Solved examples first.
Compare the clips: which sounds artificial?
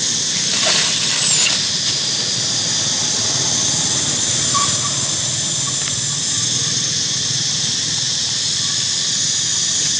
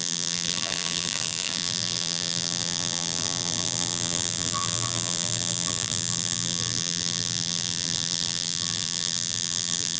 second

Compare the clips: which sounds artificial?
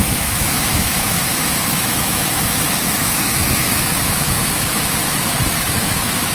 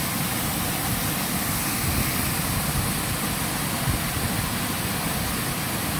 first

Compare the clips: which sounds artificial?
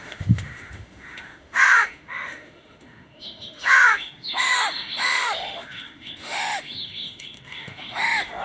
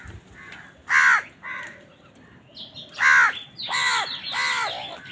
first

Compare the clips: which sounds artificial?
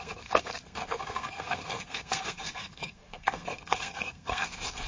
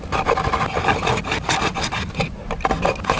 first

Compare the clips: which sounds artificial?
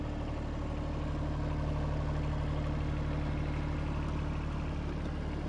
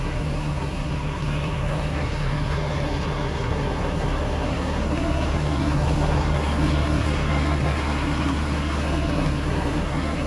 second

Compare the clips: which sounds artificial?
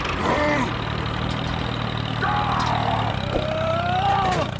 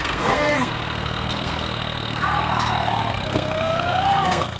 second